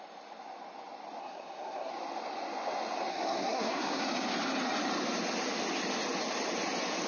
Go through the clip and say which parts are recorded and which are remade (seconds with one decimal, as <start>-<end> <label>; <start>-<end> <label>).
0.0-1.2 recorded; 1.2-1.9 remade; 1.9-3.1 recorded; 3.1-4.0 remade; 4.0-7.1 recorded